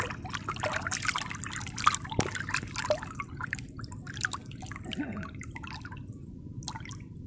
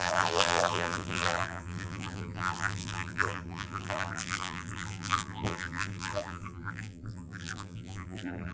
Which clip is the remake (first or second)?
second